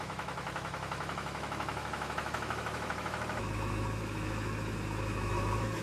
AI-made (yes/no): yes